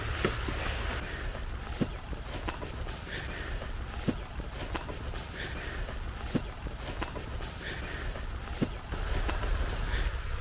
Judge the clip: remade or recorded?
recorded